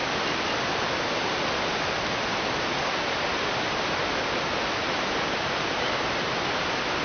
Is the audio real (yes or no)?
yes